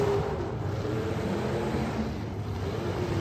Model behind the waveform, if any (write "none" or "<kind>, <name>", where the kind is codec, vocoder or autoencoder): vocoder, BigVGAN v2